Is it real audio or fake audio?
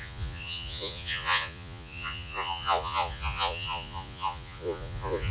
fake